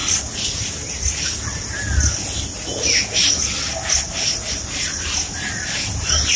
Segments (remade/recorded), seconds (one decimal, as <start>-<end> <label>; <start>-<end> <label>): 0.0-6.4 recorded